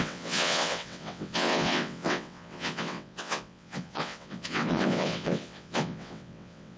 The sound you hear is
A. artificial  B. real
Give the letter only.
A